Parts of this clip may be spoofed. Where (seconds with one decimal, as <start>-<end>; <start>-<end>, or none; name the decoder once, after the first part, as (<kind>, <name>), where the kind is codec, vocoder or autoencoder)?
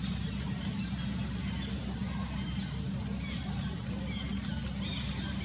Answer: none